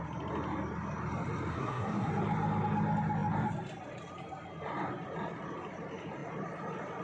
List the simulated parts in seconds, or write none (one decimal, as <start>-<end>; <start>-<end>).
1.5-2.1